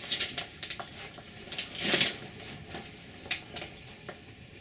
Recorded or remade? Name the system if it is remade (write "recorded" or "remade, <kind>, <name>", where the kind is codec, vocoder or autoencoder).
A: recorded